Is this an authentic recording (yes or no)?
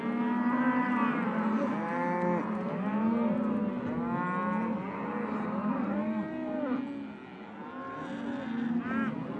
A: yes